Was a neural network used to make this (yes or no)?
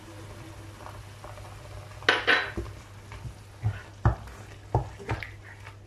no